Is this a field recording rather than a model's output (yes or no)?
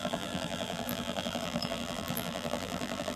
no